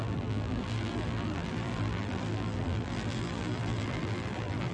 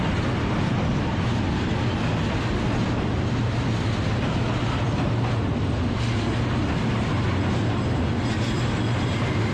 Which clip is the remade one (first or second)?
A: first